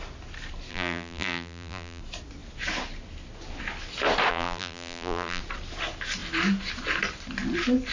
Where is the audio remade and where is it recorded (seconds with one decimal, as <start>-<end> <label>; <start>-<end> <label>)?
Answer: 0.0-0.7 recorded; 0.7-2.0 remade; 2.0-4.3 recorded; 4.3-5.4 remade; 5.4-7.9 recorded